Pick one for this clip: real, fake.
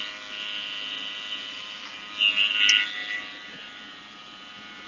real